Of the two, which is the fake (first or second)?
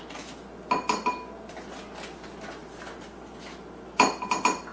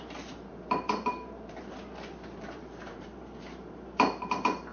second